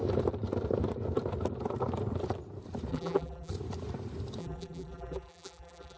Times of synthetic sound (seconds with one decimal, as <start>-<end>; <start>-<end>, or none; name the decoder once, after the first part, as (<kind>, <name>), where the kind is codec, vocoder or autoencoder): 2.9-3.5 (vocoder, BigVGAN v2); 4.4-6.0

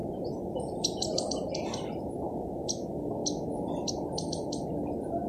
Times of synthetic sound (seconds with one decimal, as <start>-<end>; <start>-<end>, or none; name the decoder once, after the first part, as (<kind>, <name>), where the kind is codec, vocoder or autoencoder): none

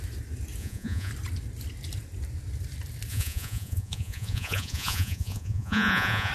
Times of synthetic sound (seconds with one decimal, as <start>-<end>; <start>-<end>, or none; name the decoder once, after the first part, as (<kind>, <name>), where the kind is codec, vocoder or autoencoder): 0.6-1.1 (vocoder, Vocos); 3.1-6.3